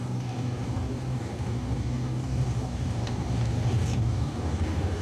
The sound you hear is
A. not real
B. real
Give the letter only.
A